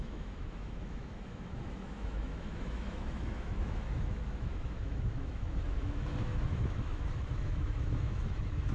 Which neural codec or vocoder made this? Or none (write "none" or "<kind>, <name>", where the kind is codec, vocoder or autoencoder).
autoencoder, DAC-VAE